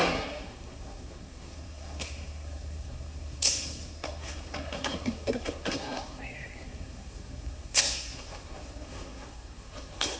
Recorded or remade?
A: remade